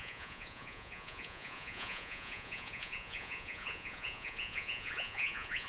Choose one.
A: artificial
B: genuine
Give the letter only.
A